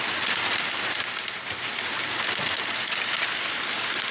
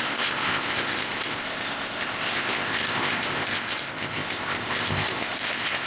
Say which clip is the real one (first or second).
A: first